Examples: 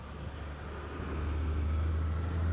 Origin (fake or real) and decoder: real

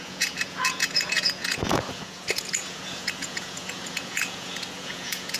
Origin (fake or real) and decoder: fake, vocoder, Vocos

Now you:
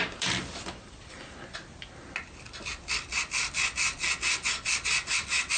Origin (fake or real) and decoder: real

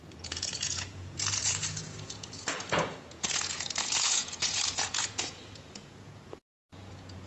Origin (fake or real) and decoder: fake, vocoder, Vocos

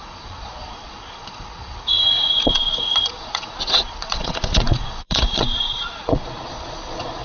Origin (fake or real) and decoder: fake, vocoder, Vocos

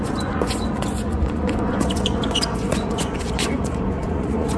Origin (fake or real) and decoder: fake, vocoder, Vocos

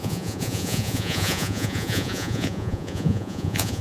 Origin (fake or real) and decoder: fake, vocoder, Vocos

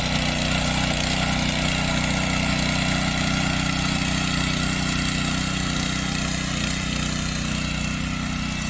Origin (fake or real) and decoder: real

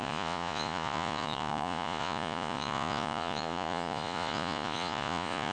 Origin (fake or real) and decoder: fake, vocoder, Vocos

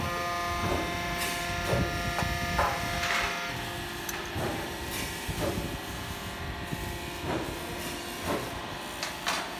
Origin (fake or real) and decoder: real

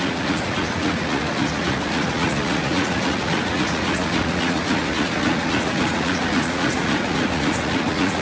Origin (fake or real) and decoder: fake, vocoder, Vocos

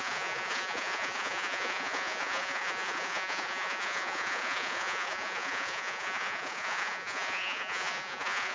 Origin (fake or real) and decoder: fake, vocoder, Vocos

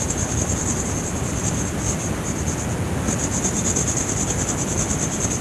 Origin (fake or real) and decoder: real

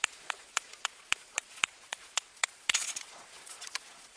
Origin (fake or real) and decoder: fake, vocoder, Vocos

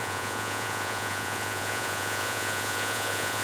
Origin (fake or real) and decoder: fake, vocoder, Vocos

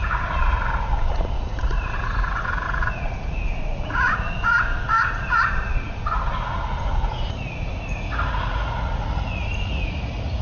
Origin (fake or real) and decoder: fake, vocoder, Vocos